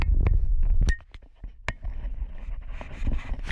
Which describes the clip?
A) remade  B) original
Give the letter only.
B